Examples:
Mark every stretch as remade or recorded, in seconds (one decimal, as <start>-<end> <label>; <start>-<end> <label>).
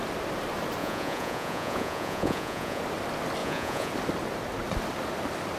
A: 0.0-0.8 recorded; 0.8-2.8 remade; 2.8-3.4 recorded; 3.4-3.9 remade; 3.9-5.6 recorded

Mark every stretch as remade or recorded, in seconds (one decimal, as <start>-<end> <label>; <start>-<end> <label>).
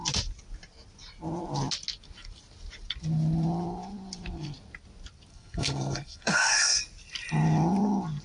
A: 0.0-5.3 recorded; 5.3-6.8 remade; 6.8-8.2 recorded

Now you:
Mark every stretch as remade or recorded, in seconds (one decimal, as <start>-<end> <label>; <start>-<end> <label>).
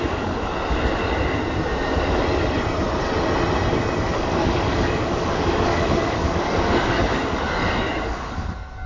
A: 0.0-0.5 remade; 0.5-4.0 recorded; 4.0-8.9 remade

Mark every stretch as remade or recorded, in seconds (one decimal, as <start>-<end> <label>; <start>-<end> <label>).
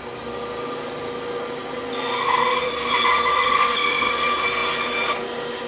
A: 0.0-3.3 recorded; 3.3-4.1 remade; 4.1-5.7 recorded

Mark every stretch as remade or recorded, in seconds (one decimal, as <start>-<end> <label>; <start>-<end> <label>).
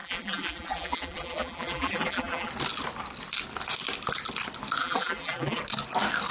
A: 0.0-2.5 remade; 2.5-4.8 recorded; 4.8-5.6 remade; 5.6-6.3 recorded